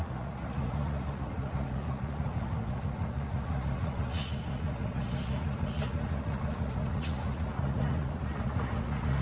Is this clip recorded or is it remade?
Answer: remade